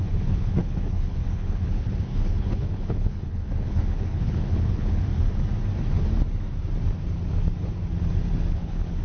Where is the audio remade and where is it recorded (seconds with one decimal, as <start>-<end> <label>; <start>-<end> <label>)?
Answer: 0.0-5.1 remade; 5.1-8.5 recorded; 8.5-9.0 remade